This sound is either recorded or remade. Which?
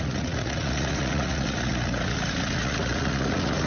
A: remade